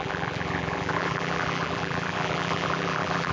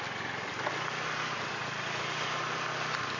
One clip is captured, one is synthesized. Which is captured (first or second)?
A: second